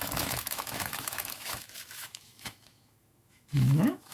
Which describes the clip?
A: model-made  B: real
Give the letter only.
A